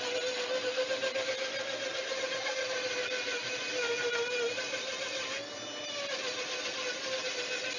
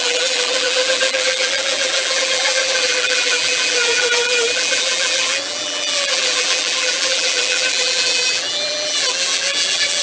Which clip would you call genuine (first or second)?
first